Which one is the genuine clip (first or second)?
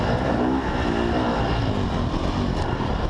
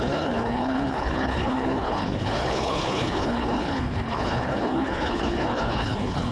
first